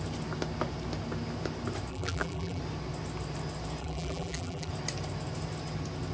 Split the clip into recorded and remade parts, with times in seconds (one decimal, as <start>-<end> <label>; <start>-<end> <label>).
0.0-1.9 recorded; 1.9-2.6 remade; 2.6-3.8 recorded; 3.8-4.7 remade; 4.7-6.1 recorded